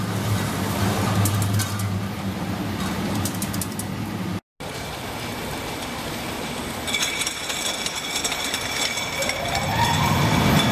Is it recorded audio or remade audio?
recorded